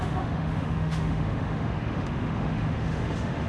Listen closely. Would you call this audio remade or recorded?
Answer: remade